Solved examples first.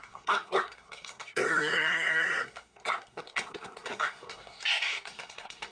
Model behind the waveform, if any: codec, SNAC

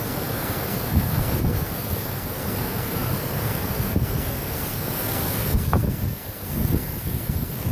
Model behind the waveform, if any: codec, SNAC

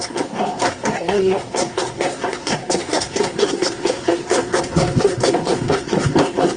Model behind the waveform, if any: codec, SNAC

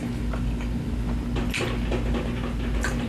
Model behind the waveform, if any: none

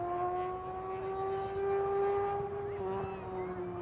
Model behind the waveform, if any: none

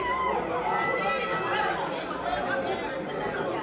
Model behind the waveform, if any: none